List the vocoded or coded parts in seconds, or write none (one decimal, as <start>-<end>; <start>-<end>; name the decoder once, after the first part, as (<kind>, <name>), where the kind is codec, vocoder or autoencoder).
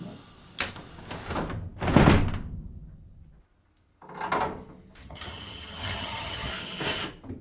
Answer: 5.0-6.5 (vocoder, HiFi-GAN)